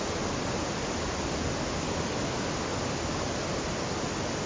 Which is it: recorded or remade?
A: recorded